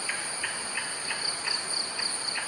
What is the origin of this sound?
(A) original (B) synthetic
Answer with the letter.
A